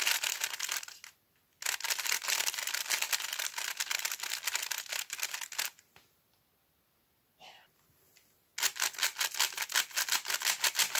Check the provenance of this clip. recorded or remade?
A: recorded